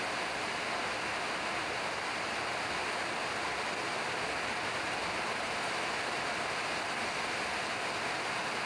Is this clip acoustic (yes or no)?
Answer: yes